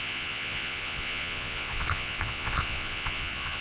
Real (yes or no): no